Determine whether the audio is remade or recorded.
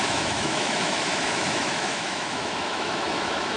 remade